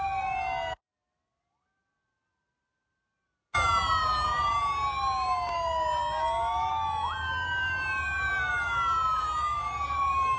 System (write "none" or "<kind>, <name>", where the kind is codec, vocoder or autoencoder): none